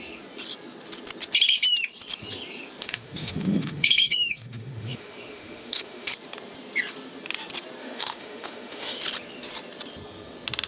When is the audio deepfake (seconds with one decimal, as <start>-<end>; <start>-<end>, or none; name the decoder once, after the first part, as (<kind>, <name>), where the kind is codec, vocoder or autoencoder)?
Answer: 2.8-6.1 (autoencoder, DAC-VAE); 7.8-9.0